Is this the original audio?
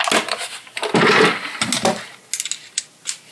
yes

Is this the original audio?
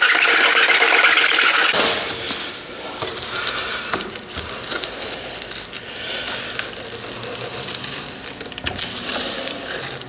yes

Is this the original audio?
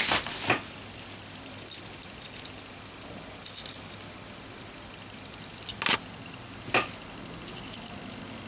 yes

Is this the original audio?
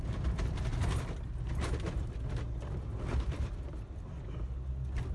yes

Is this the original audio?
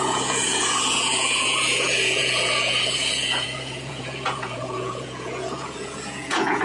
no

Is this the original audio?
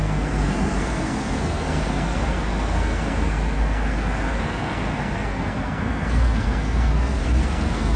no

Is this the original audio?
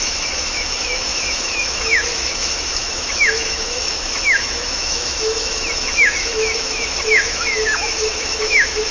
no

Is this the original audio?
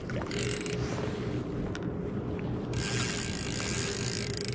yes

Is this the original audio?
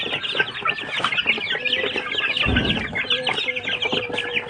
yes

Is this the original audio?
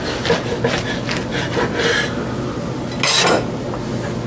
yes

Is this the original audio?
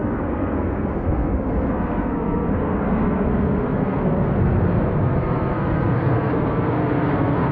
no